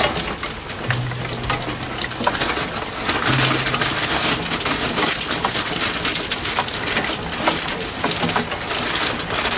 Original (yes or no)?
yes